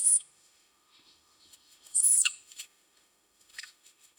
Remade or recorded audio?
remade